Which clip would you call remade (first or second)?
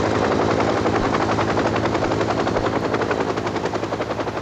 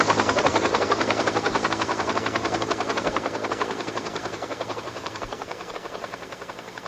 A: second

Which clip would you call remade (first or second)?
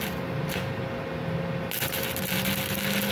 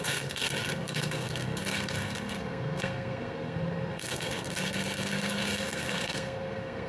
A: second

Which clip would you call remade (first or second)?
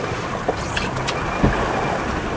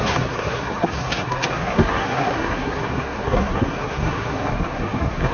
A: second